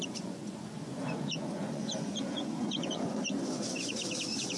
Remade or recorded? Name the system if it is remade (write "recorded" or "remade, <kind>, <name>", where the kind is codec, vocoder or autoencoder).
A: remade, vocoder, Vocos